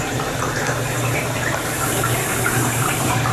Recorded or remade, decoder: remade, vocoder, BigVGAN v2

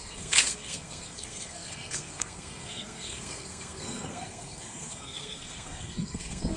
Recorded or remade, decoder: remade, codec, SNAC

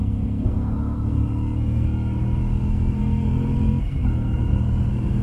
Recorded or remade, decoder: remade, codec, SNAC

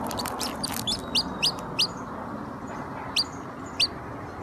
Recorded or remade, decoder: recorded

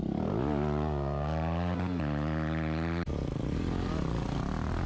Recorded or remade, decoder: recorded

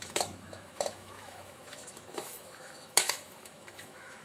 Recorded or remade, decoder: remade, autoencoder, DAC-VAE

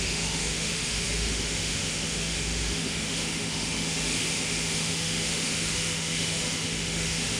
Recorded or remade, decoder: remade, autoencoder, DAC-VAE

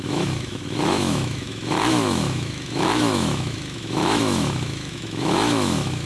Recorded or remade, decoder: remade, autoencoder, DAC-VAE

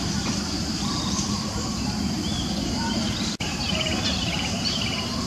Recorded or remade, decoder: remade, vocoder, BigVGAN v2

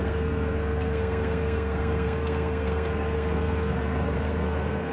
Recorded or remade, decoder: remade, codec, SNAC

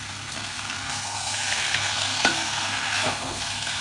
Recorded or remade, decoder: remade, codec, SNAC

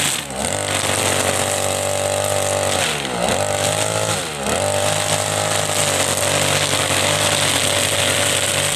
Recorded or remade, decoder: recorded